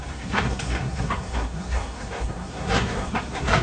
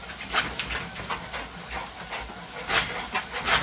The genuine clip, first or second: second